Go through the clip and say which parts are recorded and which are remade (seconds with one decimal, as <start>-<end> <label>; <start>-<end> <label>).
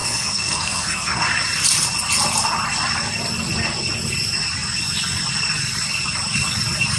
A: 0.0-1.2 remade; 1.2-7.0 recorded